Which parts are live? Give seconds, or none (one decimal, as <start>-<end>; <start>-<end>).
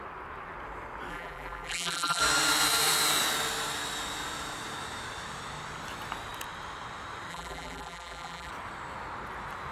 0.0-1.1; 2.2-7.3; 8.5-9.7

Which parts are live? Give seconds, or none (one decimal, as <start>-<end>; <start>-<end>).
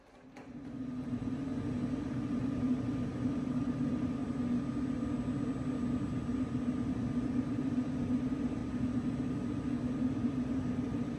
1.5-2.4; 4.2-7.2; 8.6-9.9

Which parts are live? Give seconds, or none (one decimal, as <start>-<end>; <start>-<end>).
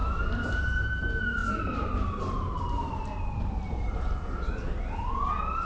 0.6-1.4; 4.8-5.6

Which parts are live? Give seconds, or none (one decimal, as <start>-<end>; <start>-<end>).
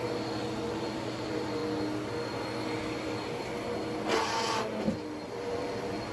1.6-5.3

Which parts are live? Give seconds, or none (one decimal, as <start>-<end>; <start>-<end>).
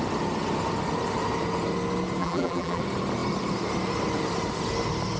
0.0-2.2; 2.8-5.2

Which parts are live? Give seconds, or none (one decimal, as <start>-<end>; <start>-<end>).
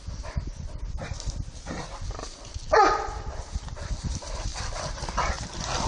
0.0-5.9